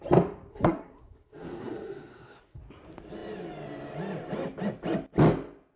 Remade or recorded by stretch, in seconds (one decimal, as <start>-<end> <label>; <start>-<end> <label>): 0.0-0.5 recorded; 0.5-2.6 remade; 2.6-5.8 recorded